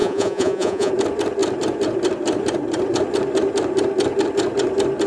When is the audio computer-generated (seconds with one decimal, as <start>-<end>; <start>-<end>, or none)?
0.0-0.9

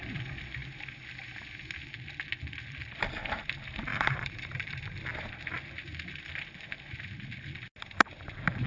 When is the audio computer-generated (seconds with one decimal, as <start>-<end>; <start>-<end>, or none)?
3.9-4.8

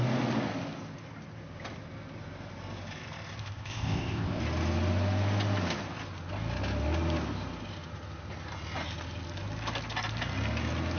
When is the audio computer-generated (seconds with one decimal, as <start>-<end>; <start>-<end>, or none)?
3.4-4.4

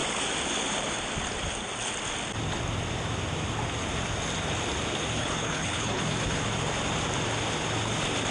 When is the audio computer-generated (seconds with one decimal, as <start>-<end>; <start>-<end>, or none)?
5.2-6.0

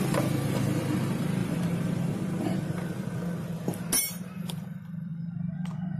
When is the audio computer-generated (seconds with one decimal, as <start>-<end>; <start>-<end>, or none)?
0.0-3.5; 4.4-5.1

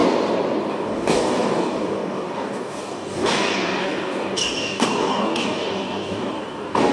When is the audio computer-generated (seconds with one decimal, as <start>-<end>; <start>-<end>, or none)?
0.7-6.9

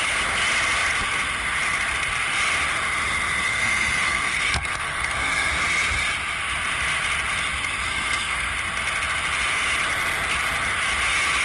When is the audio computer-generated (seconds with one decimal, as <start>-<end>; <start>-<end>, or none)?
3.5-5.5; 7.9-8.5